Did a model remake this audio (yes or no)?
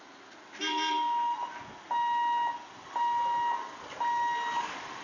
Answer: no